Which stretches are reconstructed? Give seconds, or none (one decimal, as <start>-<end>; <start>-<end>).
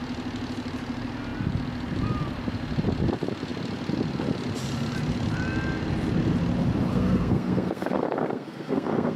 6.9-9.2